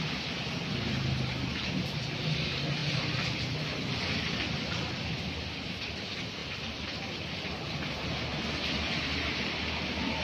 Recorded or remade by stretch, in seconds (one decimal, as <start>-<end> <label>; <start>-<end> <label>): 0.0-10.2 recorded